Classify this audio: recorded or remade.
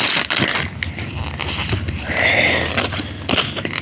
recorded